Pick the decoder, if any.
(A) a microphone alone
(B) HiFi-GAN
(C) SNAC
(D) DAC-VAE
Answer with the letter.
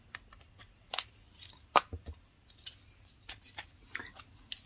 A